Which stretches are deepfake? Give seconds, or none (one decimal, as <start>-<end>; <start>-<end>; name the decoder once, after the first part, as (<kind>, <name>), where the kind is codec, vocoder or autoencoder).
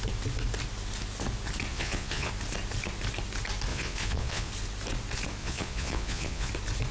1.7-2.3 (vocoder, Vocos); 3.7-4.5; 5.4-6.5